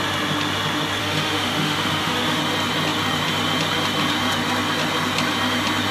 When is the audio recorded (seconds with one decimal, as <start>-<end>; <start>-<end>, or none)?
0.0-1.0; 2.4-5.9